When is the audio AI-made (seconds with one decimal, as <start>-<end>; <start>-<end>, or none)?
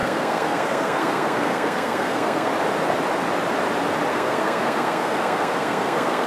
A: 0.0-2.5; 4.1-6.3